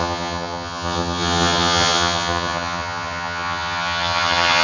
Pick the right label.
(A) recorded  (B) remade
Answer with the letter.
B